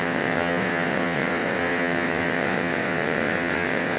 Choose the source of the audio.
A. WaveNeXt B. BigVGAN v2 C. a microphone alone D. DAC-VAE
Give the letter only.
A